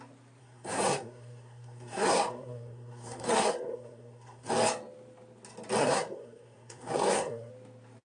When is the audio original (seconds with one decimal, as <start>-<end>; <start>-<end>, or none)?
0.0-0.4; 4.5-5.8; 7.5-8.1